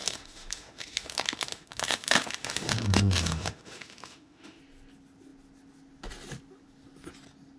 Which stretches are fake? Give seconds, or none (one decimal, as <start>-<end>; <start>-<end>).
0.0-4.6